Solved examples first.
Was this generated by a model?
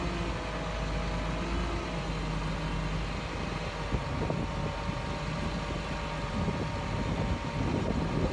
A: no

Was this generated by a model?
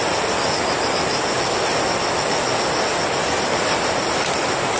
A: no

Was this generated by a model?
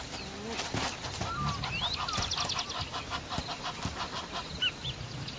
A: no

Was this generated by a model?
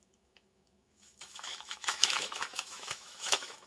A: yes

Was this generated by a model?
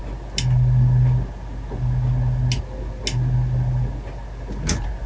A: no